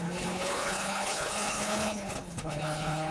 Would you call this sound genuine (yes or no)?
no